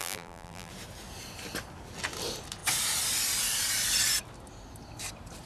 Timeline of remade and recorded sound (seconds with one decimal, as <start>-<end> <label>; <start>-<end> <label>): 0.0-0.7 remade; 0.7-5.5 recorded